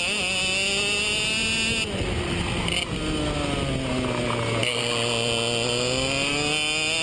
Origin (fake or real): real